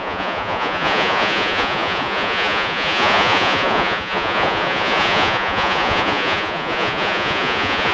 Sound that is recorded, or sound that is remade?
remade